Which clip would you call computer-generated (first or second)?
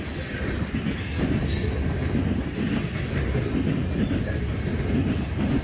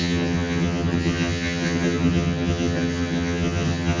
second